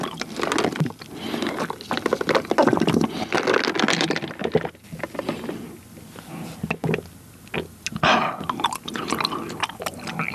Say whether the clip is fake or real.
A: real